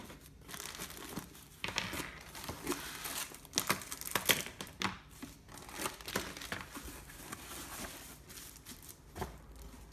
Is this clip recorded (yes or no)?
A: yes